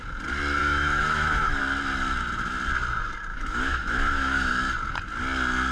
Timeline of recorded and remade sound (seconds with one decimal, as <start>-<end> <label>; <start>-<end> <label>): 0.0-0.6 recorded; 0.6-1.6 remade; 1.6-3.3 recorded; 3.3-4.5 remade; 4.5-5.7 recorded